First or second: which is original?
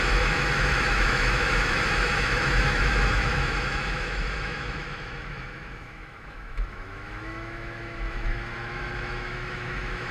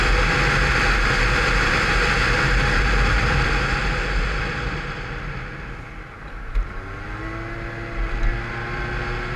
second